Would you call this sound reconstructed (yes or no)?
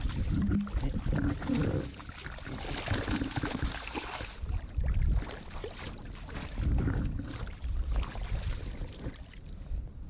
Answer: no